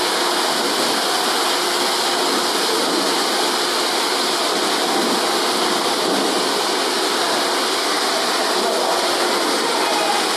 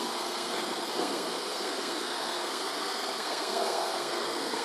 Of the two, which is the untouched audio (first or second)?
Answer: first